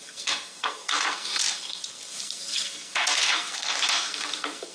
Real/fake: fake